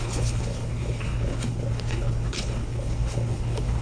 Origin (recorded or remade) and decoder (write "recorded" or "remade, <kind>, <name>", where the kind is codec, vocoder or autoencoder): remade, codec, HILCodec